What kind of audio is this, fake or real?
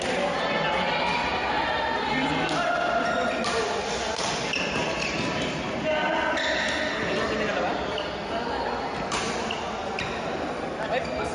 real